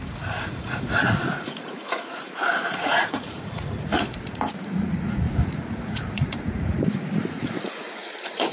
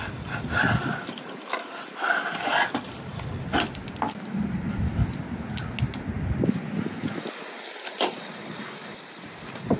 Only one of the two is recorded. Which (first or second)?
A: second